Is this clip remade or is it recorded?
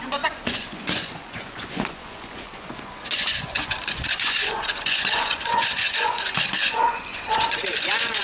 remade